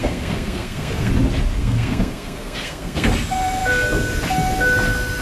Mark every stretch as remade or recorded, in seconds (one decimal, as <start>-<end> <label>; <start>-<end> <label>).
0.0-1.1 remade; 1.1-1.6 recorded; 1.6-3.1 remade; 3.1-5.2 recorded